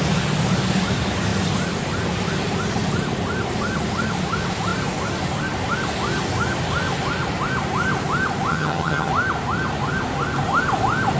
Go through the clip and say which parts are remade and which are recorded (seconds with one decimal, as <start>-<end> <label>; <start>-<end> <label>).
0.0-8.5 recorded; 8.5-9.1 remade; 9.1-11.2 recorded